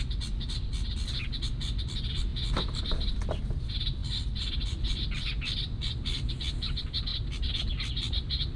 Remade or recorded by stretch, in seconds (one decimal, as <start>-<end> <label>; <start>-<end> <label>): 0.0-2.3 recorded; 2.3-2.8 remade; 2.8-8.6 recorded